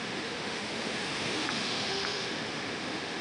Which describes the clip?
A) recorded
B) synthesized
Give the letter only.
B